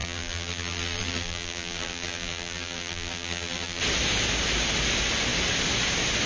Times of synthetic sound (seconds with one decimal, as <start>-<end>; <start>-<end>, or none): 0.0-3.8